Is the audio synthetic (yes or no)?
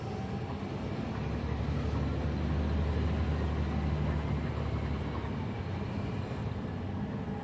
no